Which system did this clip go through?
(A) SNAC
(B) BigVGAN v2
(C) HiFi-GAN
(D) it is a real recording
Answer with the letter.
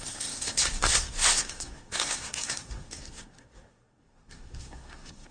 A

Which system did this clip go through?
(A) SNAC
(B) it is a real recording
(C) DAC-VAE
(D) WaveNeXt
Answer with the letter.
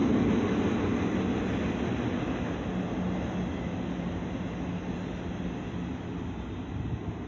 B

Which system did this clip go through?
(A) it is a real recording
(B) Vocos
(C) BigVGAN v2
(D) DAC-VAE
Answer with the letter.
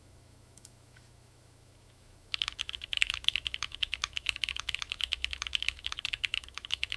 D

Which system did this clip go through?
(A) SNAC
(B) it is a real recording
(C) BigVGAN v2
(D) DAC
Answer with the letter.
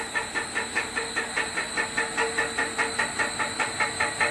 B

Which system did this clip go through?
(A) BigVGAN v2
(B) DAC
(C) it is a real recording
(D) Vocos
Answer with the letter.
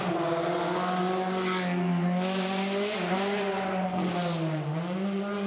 C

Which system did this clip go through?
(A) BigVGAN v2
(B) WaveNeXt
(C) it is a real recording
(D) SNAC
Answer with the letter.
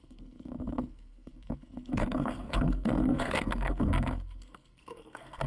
D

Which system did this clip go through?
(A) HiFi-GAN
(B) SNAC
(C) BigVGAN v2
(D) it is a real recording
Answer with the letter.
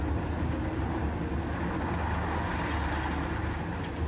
D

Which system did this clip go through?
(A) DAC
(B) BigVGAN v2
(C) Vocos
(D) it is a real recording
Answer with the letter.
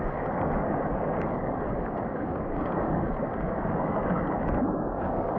A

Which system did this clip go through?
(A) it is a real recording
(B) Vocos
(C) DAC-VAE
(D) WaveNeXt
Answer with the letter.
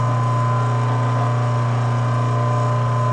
A